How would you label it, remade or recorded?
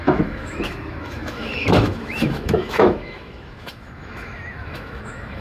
remade